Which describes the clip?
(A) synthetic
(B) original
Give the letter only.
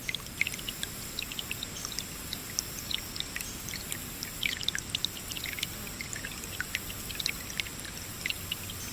B